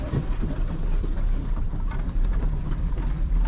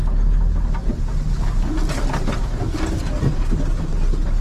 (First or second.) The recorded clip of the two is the second